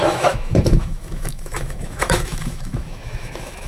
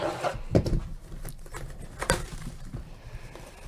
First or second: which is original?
second